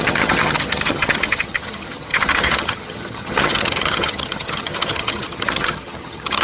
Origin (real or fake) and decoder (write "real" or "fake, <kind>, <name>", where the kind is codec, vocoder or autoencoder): fake, vocoder, HiFi-GAN